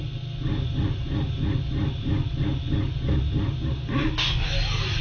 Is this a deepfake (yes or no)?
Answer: no